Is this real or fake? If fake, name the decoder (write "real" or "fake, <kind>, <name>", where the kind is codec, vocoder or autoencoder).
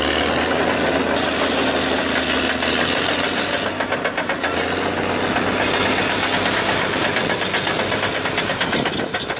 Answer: real